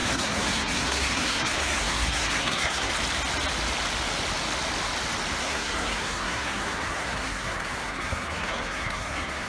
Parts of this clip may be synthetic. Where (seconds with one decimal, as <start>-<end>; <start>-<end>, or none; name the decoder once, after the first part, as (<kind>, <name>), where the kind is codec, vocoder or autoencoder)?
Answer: 0.0-2.9 (codec, SNAC); 5.4-9.5